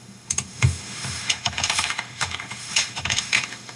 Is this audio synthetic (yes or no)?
yes